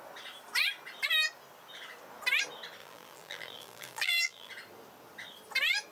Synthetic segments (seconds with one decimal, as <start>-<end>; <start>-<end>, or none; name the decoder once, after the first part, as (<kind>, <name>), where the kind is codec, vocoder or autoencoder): 2.8-4.5 (vocoder, BigVGAN v2)